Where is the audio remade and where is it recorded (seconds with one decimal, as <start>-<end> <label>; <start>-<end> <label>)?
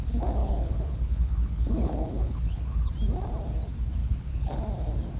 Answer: 0.0-0.4 recorded; 0.4-2.9 remade; 2.9-4.0 recorded; 4.0-4.6 remade; 4.6-5.2 recorded